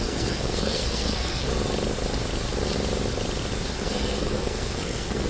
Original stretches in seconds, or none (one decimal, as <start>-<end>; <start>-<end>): 1.5-3.7